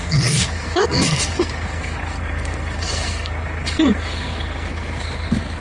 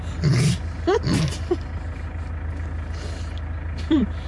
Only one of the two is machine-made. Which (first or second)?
first